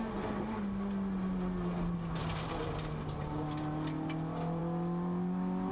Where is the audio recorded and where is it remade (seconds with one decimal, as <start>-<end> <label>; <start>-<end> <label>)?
0.0-5.7 recorded